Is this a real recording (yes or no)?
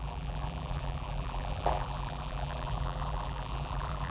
no